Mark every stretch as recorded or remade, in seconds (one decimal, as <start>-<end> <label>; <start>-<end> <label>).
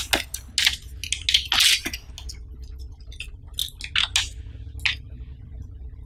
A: 0.0-6.1 recorded